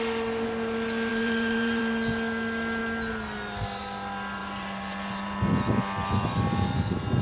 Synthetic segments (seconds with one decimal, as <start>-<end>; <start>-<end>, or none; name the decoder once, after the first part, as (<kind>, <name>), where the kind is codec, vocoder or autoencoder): 1.1-1.8 (vocoder, BigVGAN v2); 4.4-5.4